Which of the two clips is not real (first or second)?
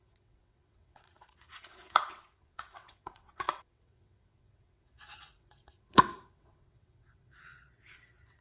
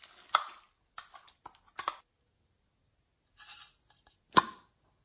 first